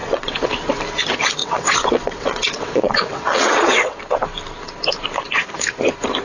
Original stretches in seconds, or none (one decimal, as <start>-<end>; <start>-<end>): 0.5-1.4; 4.0-6.2